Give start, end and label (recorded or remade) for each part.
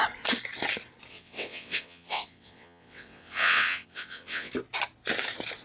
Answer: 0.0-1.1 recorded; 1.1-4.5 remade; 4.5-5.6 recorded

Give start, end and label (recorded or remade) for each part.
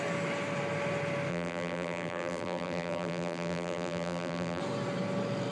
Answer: 0.0-1.3 recorded; 1.3-4.6 remade; 4.6-5.5 recorded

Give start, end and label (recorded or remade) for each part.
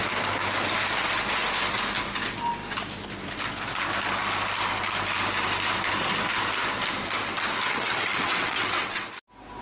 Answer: 0.0-7.7 recorded; 7.7-9.1 remade; 9.1-9.6 recorded